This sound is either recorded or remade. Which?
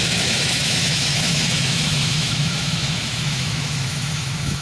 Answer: remade